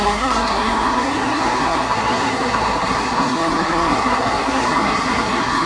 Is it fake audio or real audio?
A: fake